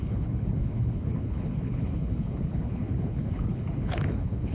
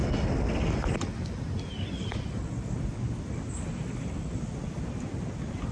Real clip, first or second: second